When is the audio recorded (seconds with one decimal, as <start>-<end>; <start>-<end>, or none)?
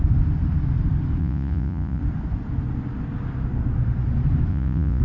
0.0-1.2; 2.0-4.5